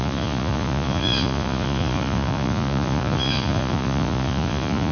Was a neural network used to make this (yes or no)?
yes